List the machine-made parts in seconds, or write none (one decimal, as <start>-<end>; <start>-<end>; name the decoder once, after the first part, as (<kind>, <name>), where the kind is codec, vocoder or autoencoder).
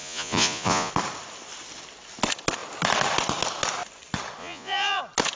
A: 0.0-0.9 (vocoder, Vocos); 4.4-5.0